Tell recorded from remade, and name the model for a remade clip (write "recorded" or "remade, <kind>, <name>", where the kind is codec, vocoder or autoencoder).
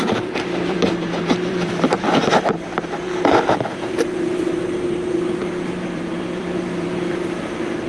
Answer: remade, vocoder, BigVGAN v2